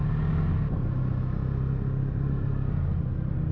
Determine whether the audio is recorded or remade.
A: recorded